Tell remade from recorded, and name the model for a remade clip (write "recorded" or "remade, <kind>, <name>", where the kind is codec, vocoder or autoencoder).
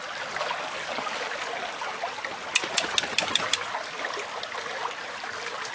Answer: recorded